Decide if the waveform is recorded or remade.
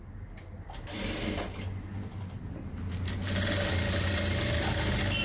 recorded